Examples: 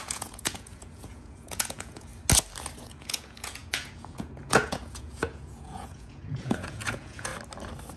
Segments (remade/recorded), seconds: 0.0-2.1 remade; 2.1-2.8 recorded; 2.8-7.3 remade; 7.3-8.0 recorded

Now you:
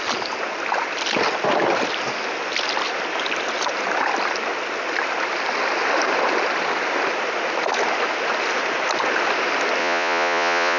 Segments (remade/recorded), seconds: 0.0-9.8 recorded; 9.8-10.8 remade

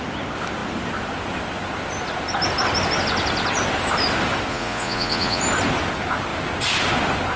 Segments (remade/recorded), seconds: 0.0-4.5 recorded; 4.5-5.4 remade; 5.4-7.4 recorded

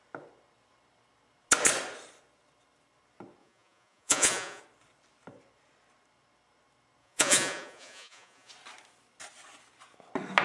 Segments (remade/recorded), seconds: 0.0-3.4 recorded; 3.4-4.6 remade; 4.6-7.0 recorded; 7.0-8.5 remade; 8.5-10.4 recorded

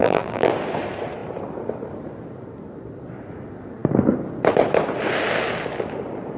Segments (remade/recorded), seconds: 0.0-0.5 remade; 0.5-6.4 recorded